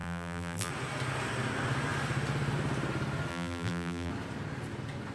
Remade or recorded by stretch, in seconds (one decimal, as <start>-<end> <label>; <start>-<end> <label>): 0.0-0.7 remade; 0.7-3.3 recorded; 3.3-4.1 remade; 4.1-5.1 recorded